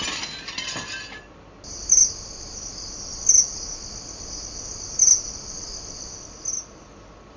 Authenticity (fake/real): real